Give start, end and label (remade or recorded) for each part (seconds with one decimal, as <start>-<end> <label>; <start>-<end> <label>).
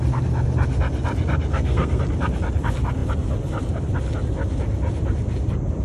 0.0-1.5 recorded; 1.5-2.0 remade; 2.0-5.8 recorded